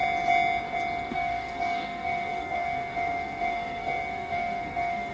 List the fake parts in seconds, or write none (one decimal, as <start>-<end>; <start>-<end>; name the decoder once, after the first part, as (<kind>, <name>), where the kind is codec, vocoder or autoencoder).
1.1-5.1 (codec, SNAC)